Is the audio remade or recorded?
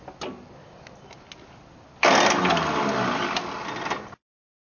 recorded